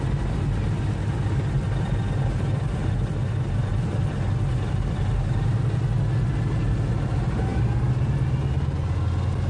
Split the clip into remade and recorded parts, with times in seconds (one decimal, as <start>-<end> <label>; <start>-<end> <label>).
0.0-9.5 recorded